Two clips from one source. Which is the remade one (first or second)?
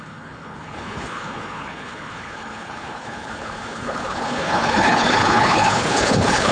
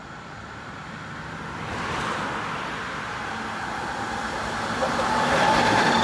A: first